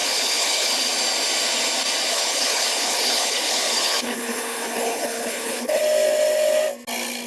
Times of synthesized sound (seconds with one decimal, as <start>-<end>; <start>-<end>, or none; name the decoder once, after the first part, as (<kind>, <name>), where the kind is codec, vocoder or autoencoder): 0.0-0.9 (codec, HILCodec); 2.1-5.8